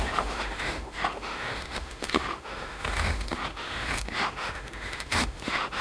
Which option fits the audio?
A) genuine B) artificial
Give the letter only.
B